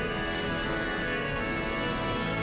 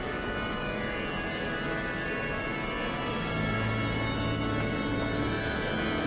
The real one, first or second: second